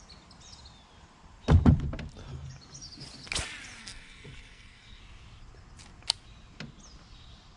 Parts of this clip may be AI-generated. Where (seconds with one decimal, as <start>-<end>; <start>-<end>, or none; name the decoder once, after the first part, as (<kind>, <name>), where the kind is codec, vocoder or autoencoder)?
3.8-5.0 (codec, SNAC)